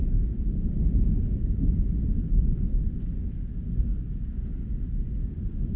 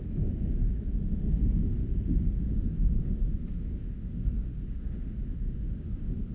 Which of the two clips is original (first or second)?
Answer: first